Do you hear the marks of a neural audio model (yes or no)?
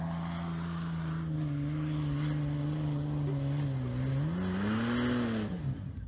no